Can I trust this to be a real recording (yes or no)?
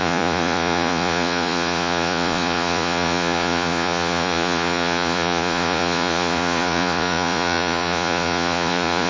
no